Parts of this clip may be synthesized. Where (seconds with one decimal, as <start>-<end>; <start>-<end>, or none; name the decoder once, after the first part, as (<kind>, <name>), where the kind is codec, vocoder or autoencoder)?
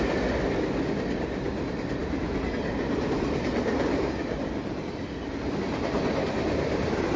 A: none